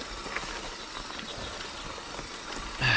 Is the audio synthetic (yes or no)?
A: no